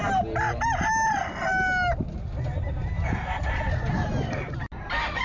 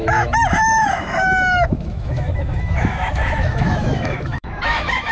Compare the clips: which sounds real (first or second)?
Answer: first